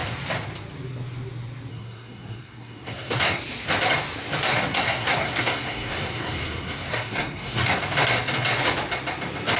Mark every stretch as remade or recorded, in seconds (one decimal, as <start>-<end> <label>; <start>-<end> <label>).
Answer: 0.0-1.7 recorded; 1.7-3.4 remade; 3.4-4.7 recorded; 4.7-7.8 remade; 7.8-9.6 recorded